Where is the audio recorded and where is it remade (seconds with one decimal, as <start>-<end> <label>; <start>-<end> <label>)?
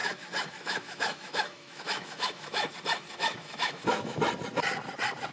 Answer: 0.0-2.7 remade; 2.7-3.2 recorded; 3.2-4.2 remade; 4.2-5.3 recorded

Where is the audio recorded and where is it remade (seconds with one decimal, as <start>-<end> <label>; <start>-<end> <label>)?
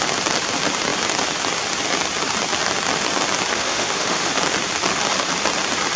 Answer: 0.0-3.5 recorded; 3.5-4.3 remade; 4.3-6.0 recorded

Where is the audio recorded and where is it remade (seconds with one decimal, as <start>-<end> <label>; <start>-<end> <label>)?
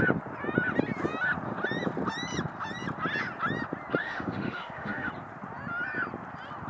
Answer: 0.0-4.0 recorded; 4.0-5.1 remade; 5.1-6.7 recorded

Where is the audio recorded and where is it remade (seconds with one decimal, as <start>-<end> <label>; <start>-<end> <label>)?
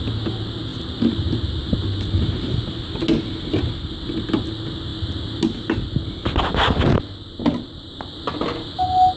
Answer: 0.0-9.2 recorded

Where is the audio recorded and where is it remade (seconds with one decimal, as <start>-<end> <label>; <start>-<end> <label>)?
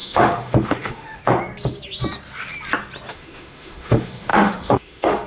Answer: 0.0-1.2 remade; 1.2-3.1 recorded; 3.1-5.3 remade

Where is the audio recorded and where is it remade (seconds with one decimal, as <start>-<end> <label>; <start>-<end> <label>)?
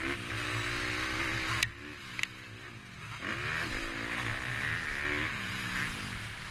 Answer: 0.0-6.5 recorded